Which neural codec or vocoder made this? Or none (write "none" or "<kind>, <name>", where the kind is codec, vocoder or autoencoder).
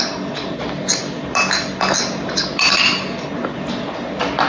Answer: none